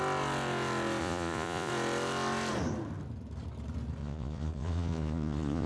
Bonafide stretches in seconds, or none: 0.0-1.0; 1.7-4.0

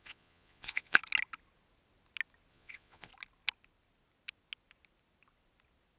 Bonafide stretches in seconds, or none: 1.0-2.5; 3.1-6.0

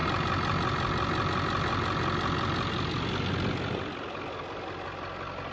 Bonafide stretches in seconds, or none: 0.0-5.5